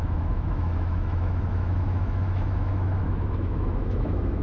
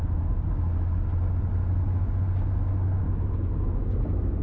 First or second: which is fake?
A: first